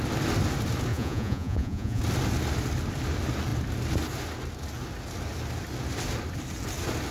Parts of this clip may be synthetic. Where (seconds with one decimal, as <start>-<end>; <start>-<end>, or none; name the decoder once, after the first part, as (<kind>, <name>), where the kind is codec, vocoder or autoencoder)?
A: 0.9-2.0 (vocoder, Vocos)

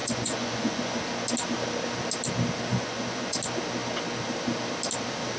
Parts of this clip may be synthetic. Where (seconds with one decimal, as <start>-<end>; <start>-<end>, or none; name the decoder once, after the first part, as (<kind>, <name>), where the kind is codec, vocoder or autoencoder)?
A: 0.0-1.0 (vocoder, Vocos); 2.7-3.4

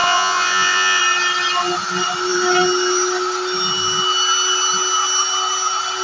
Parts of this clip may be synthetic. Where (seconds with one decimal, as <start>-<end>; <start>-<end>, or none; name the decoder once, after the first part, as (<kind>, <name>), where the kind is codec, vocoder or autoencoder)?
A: 0.0-1.0 (vocoder, Vocos)

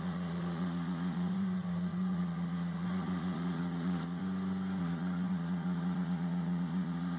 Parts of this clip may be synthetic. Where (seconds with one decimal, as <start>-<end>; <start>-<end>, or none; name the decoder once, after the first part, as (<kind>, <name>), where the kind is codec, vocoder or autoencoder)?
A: 0.0-4.2 (vocoder, Vocos); 4.8-7.2

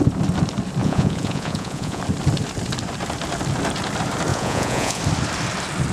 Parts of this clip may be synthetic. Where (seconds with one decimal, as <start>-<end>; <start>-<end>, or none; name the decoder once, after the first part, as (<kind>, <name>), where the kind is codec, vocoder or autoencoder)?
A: 0.8-2.0 (vocoder, Vocos); 4.3-5.0

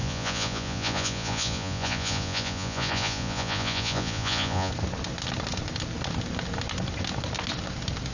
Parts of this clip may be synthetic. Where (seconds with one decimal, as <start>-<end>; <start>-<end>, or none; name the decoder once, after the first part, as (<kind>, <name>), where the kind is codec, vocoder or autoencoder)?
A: 0.0-4.7 (vocoder, Vocos)